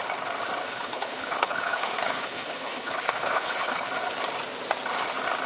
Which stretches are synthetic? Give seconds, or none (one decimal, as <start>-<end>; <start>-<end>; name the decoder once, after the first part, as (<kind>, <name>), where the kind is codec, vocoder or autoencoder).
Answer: 0.6-3.9 (codec, HILCodec)